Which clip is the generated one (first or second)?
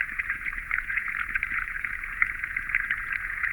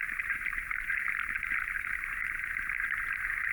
first